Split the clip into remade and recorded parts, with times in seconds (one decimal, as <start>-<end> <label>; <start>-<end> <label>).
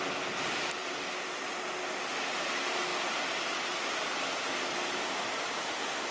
0.0-6.1 recorded